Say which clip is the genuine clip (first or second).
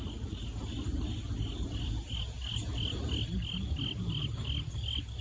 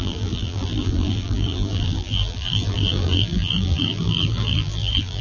first